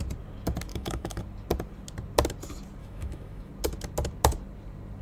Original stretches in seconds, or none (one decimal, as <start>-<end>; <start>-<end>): 0.0-0.7; 1.2-2.8; 3.5-5.0